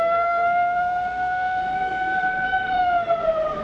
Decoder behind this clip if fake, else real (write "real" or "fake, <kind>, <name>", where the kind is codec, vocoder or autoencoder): fake, codec, SNAC